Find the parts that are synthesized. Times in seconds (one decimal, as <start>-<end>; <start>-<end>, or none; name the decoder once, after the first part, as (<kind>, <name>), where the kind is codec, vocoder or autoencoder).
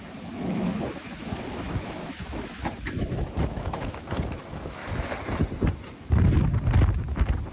0.0-4.8 (autoencoder, DAC-VAE)